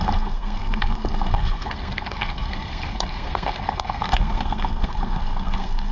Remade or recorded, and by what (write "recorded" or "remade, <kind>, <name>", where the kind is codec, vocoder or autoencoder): remade, codec, SNAC